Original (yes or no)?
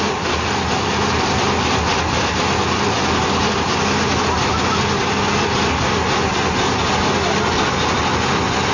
yes